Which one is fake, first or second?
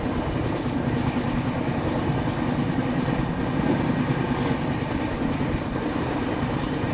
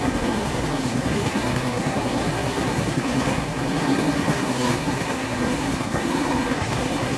second